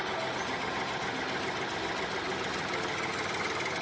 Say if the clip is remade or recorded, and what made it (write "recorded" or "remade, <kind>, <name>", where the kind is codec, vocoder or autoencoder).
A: recorded